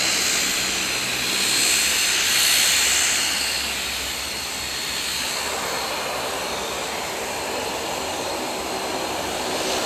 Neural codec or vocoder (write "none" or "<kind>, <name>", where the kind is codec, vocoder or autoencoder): none